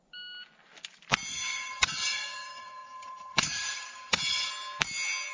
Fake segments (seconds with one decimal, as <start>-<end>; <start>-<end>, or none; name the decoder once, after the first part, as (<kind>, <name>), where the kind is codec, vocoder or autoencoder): 1.3-4.5 (vocoder, HiFi-GAN)